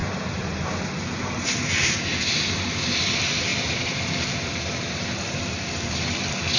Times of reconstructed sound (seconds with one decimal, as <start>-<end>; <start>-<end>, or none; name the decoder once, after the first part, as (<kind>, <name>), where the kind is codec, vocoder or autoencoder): 3.5-5.9 (vocoder, BigVGAN v2)